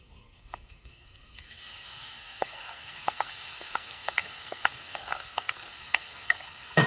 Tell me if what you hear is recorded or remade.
remade